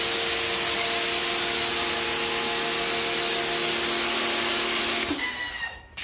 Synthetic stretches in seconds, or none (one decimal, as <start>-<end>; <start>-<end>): none